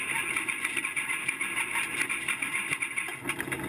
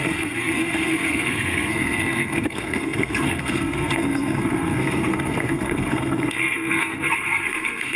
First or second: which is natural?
first